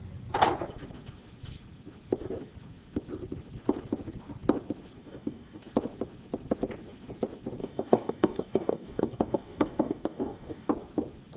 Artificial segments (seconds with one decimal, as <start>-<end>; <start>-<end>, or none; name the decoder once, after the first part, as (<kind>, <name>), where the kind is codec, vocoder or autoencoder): 5.0-5.6 (codec, DAC); 7.6-10.7